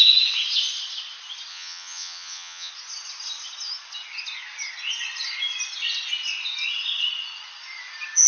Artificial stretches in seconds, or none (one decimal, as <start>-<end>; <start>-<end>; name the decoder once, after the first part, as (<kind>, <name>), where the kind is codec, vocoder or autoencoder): 1.5-2.7 (vocoder, Vocos)